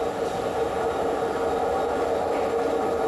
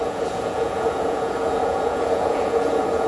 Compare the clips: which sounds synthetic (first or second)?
second